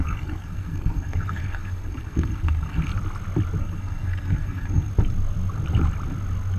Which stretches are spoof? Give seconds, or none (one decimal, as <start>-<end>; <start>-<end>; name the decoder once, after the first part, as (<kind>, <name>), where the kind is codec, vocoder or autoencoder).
0.0-2.9 (codec, SNAC); 3.6-4.9